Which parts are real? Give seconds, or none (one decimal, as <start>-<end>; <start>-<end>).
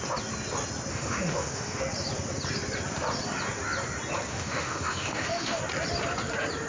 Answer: 0.0-0.9; 1.8-4.3; 5.6-6.7